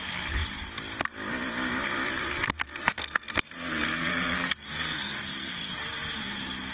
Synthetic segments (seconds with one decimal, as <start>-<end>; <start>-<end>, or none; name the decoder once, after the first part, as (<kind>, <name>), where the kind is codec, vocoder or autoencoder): 2.8-5.7 (codec, SNAC)